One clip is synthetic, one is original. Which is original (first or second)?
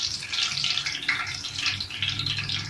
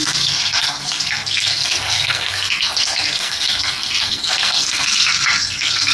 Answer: first